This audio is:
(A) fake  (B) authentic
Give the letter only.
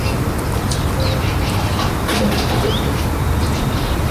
B